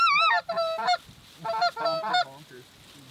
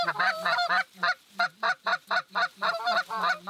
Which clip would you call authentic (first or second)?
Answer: first